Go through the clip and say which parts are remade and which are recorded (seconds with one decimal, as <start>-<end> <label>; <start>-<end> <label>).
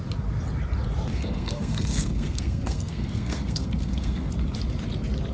0.0-1.1 recorded; 1.1-4.3 remade; 4.3-5.3 recorded